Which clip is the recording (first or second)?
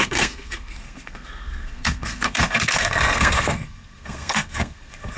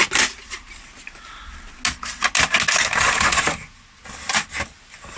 second